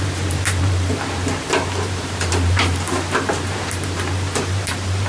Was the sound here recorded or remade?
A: remade